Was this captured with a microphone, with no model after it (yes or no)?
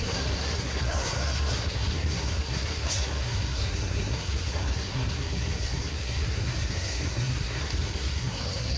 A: no